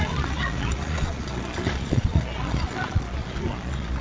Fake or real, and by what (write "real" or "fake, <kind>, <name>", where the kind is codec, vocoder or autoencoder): fake, vocoder, Vocos